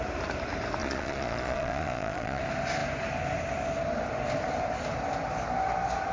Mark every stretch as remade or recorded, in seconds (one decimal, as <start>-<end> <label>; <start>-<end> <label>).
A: 0.0-0.8 recorded; 0.8-2.4 remade; 2.4-6.1 recorded